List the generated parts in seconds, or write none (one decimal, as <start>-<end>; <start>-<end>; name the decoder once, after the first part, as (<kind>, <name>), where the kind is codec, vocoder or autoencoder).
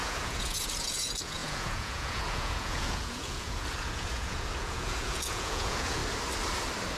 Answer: 0.0-6.0 (vocoder, Vocos)